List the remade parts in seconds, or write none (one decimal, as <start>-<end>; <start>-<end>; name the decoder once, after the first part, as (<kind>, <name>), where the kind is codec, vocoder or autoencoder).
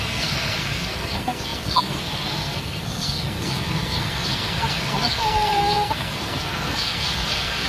0.0-7.7 (codec, SNAC)